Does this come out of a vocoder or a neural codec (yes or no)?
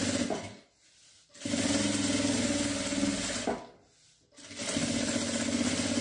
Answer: no